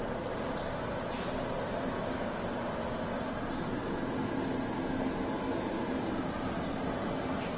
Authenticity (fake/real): real